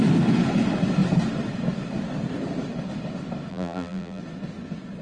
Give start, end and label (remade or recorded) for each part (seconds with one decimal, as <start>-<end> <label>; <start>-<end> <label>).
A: 0.0-3.5 recorded; 3.5-4.2 remade; 4.2-5.0 recorded